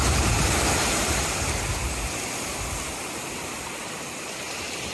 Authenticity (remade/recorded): recorded